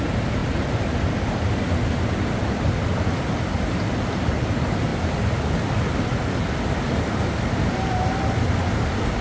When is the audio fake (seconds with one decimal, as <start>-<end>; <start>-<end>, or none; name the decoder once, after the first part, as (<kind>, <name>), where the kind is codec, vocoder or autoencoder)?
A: none